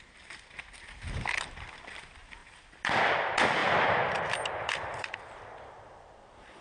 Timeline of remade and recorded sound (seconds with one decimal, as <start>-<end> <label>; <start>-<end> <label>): 0.0-2.4 recorded; 2.4-3.0 remade; 3.0-3.6 recorded; 3.6-5.1 remade; 5.1-6.6 recorded